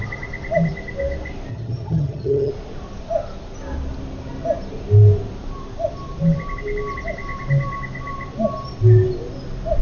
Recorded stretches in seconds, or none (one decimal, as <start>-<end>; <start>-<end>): 0.0-1.5; 2.5-9.8